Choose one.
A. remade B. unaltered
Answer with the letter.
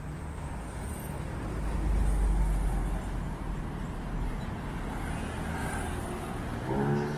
B